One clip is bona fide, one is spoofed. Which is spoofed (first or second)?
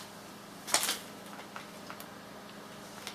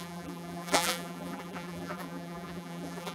second